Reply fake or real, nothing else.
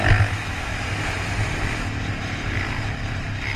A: real